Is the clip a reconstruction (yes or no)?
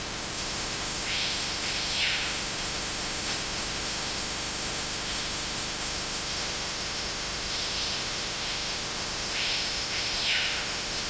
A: yes